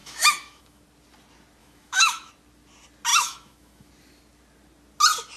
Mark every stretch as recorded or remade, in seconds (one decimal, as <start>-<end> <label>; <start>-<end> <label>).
0.0-0.8 remade; 0.8-1.6 recorded; 1.6-2.3 remade; 2.3-3.1 recorded; 3.1-3.9 remade; 3.9-5.4 recorded

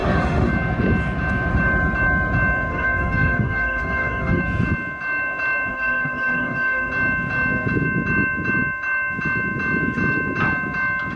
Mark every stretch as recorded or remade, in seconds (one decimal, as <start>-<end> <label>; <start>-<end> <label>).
0.0-0.5 remade; 0.5-2.7 recorded; 2.7-4.4 remade; 4.4-5.7 recorded; 5.7-6.9 remade; 6.9-11.2 recorded